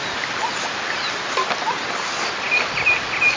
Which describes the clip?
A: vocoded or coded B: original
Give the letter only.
B